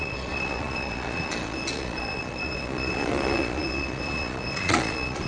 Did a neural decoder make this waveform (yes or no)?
yes